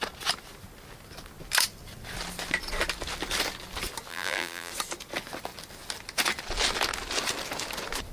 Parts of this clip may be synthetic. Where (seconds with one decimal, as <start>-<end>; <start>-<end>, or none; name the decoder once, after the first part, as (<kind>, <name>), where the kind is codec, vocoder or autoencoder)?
4.1-4.7 (vocoder, BigVGAN v2)